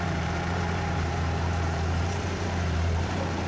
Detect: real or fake fake